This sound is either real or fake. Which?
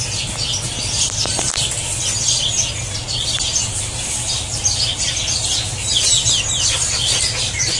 real